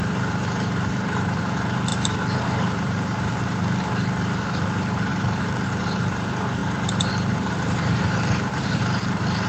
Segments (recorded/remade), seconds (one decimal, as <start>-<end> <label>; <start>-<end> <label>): 0.0-9.5 remade